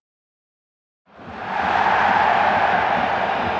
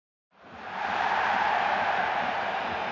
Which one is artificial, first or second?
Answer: second